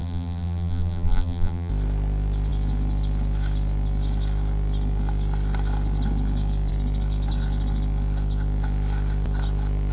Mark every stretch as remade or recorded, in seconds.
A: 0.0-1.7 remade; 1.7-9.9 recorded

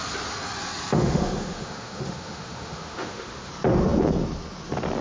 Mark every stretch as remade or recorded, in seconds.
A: 0.0-1.0 recorded; 1.0-3.5 remade; 3.5-5.0 recorded

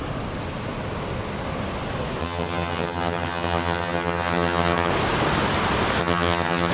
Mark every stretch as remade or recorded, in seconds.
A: 0.0-2.2 recorded; 2.2-4.9 remade; 4.9-6.0 recorded; 6.0-6.7 remade

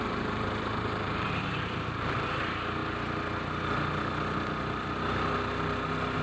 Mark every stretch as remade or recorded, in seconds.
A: 0.0-2.8 remade; 2.8-6.2 recorded